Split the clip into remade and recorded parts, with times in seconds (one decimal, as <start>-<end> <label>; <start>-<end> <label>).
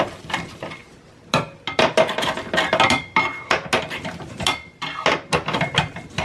0.0-6.2 recorded